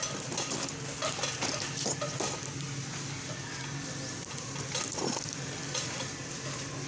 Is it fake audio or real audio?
real